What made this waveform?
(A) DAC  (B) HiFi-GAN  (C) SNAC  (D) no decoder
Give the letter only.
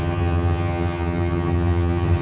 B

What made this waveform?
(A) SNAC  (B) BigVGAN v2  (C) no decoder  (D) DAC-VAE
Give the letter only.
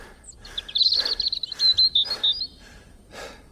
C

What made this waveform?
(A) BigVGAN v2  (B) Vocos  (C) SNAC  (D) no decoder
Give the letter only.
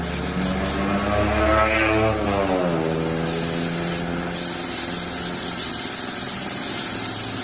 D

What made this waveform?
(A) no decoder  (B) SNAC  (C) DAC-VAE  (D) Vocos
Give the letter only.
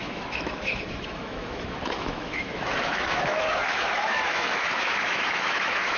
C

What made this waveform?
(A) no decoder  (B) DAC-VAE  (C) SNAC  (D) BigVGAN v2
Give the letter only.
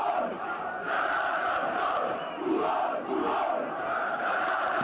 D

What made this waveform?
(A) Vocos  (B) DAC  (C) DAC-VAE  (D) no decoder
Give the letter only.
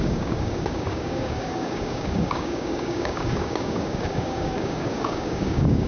B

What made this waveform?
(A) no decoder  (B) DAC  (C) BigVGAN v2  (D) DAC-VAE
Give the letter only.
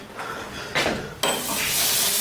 A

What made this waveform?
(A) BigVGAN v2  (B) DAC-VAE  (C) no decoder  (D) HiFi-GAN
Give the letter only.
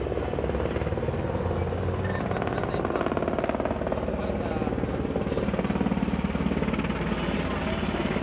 C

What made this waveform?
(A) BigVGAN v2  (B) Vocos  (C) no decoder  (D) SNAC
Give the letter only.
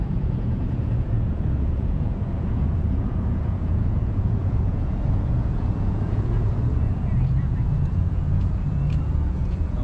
B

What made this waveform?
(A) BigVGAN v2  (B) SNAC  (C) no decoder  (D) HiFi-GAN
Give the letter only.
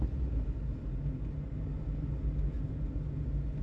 C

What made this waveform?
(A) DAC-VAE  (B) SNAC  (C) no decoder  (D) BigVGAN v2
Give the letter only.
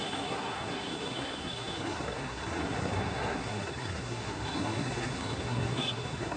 B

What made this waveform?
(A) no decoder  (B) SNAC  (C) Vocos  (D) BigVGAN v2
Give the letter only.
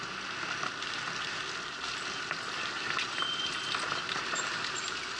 A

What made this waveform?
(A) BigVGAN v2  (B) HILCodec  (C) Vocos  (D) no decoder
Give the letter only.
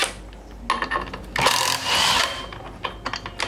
D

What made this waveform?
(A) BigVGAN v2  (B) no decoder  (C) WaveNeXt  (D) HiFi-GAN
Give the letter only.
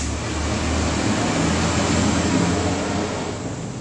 B